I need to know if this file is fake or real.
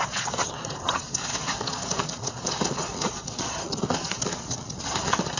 fake